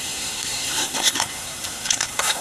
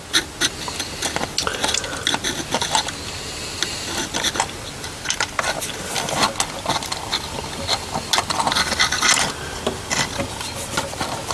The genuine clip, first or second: second